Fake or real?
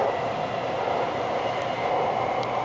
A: real